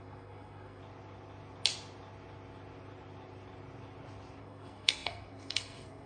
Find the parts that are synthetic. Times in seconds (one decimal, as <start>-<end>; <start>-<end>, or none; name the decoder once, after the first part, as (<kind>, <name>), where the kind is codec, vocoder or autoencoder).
0.0-0.8 (codec, SNAC); 4.4-6.1